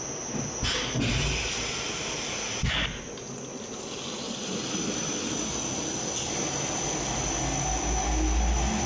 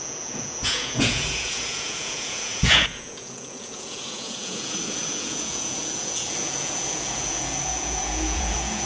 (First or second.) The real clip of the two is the first